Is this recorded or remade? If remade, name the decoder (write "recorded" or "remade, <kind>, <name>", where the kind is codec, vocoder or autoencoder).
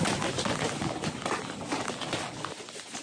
recorded